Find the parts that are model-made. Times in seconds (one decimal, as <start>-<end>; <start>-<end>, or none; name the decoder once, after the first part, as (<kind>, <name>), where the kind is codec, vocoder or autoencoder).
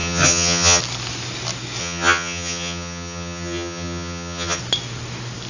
0.0-0.8 (vocoder, HiFi-GAN); 1.8-4.6